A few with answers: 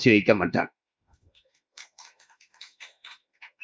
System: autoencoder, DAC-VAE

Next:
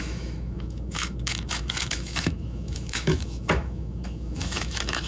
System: autoencoder, DAC-VAE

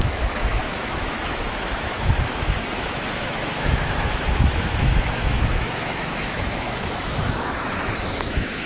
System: autoencoder, DAC-VAE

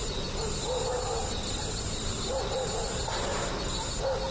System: none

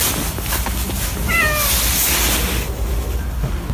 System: none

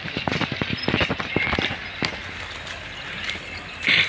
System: none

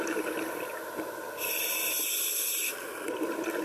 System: none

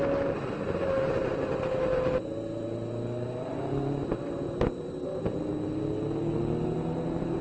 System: none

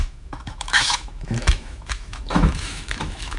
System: autoencoder, DAC-VAE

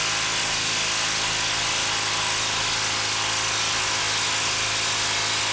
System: none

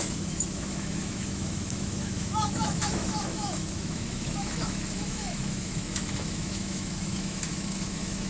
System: autoencoder, DAC-VAE